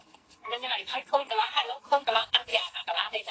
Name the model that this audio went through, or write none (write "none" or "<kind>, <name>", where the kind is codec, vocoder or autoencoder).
codec, SNAC